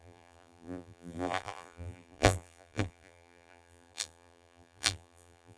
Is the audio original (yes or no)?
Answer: no